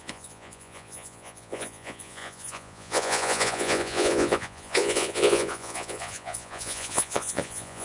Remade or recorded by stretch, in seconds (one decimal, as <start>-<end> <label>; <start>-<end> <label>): 0.0-7.8 remade